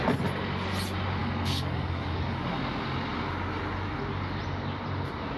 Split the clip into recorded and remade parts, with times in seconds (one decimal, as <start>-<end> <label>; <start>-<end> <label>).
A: 0.0-1.2 recorded; 1.2-2.5 remade; 2.5-5.4 recorded